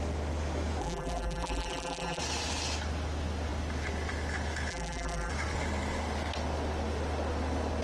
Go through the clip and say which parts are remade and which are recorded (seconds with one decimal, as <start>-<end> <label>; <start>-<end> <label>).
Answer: 0.0-0.8 recorded; 0.8-2.2 remade; 2.2-4.7 recorded; 4.7-5.3 remade; 5.3-7.8 recorded